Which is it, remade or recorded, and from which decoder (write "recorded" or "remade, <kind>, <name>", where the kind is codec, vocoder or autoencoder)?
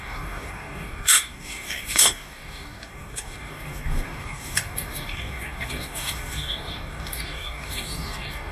remade, codec, DAC